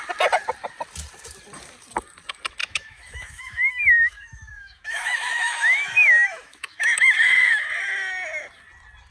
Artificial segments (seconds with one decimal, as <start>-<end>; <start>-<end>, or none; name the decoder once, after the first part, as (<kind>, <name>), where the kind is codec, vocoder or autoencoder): 2.6-7.7 (autoencoder, DAC-VAE)